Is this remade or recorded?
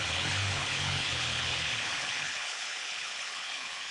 remade